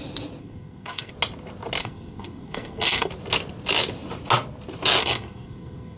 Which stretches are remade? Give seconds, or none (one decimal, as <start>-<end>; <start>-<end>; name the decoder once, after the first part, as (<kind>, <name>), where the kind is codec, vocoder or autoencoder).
0.4-1.1 (codec, SNAC); 1.8-3.1; 5.0-6.0